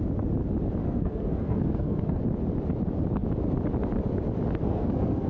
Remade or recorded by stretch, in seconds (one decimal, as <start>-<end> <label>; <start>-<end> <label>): 0.0-0.8 recorded; 0.8-2.2 remade; 2.2-4.6 recorded; 4.6-5.3 remade